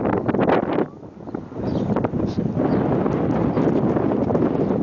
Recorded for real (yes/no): yes